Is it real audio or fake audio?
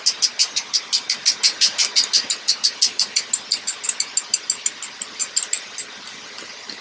real